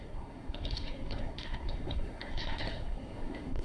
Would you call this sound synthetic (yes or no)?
yes